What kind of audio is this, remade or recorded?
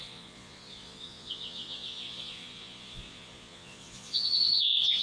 remade